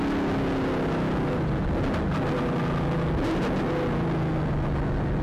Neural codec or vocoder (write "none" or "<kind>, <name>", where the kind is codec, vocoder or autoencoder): none